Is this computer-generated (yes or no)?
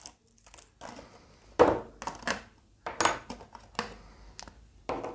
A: no